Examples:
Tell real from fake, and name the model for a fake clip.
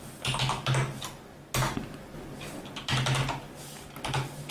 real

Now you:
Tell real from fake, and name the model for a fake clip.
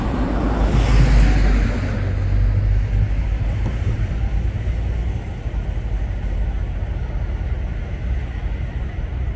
real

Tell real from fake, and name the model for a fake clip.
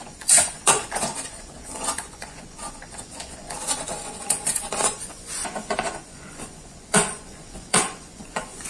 fake, vocoder, Vocos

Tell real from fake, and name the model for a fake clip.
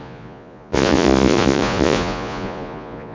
fake, vocoder, Vocos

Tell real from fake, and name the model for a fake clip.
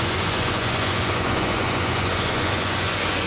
fake, vocoder, Vocos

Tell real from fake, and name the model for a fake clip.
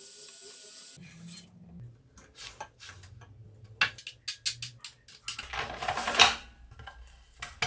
real